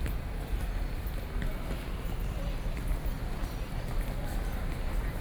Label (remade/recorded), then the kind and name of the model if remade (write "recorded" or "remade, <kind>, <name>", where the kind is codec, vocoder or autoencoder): recorded